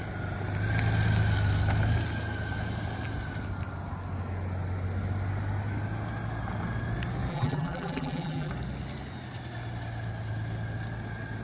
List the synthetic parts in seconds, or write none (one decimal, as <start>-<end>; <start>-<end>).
7.3-8.5